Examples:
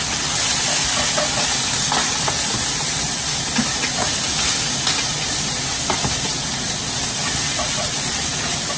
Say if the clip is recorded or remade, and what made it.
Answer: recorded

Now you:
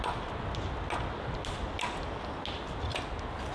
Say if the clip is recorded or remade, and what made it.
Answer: recorded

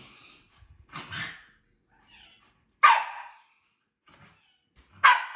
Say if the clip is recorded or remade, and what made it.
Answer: recorded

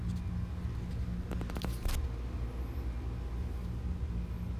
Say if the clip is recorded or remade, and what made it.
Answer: recorded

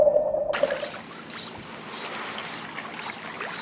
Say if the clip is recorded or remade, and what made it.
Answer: recorded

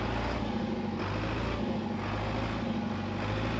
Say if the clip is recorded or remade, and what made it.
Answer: recorded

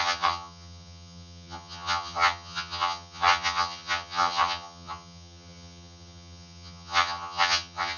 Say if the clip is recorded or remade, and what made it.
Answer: remade, vocoder, HiFi-GAN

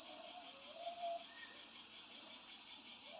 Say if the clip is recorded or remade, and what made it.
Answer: recorded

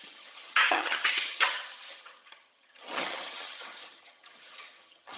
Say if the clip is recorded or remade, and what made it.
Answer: remade, vocoder, HiFi-GAN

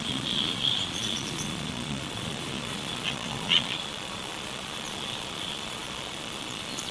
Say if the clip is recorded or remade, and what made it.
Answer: remade, vocoder, Vocos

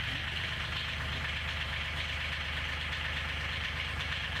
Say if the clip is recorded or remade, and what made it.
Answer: remade, vocoder, BigVGAN v2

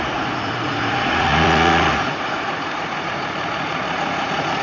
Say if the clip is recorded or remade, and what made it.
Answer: remade, vocoder, Vocos